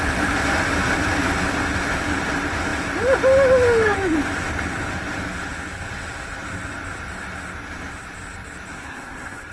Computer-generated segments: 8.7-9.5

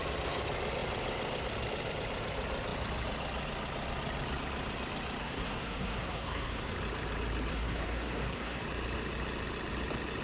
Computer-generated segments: 5.2-6.7; 7.5-8.6

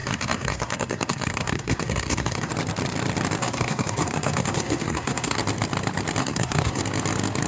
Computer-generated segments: 0.0-2.5; 3.4-5.4; 6.2-6.8

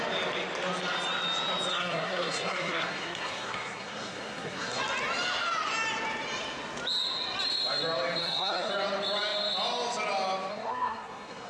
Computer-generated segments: 1.7-4.8; 8.2-8.7; 10.5-11.5

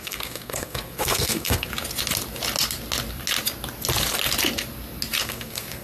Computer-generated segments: 0.0-1.7; 5.2-5.8

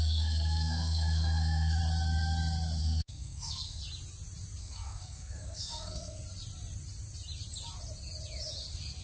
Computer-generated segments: 0.0-1.8; 2.8-3.8; 4.6-6.2

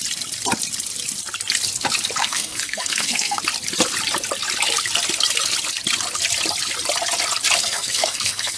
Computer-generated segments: 2.2-3.4; 7.6-8.6

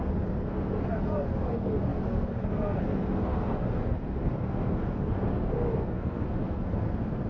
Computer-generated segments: 0.0-7.3